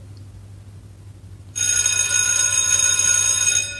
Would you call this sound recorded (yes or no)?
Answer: yes